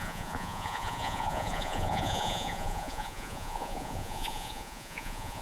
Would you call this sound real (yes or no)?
no